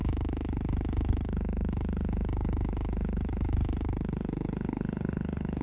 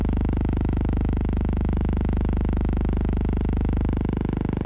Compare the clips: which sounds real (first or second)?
second